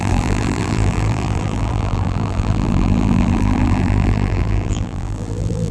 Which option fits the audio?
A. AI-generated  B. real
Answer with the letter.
A